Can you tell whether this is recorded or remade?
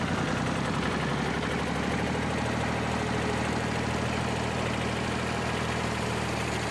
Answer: recorded